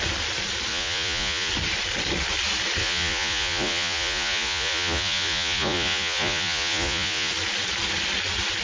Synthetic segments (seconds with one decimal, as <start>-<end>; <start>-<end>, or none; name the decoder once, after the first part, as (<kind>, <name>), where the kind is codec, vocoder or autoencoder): 0.7-1.5 (vocoder, Vocos); 2.8-7.3